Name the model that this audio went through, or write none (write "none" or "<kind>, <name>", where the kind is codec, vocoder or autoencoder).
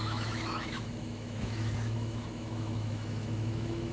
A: autoencoder, DAC-VAE